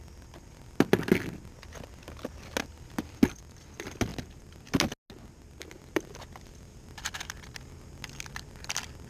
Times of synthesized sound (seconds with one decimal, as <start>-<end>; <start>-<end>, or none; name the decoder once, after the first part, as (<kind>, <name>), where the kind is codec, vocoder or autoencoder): none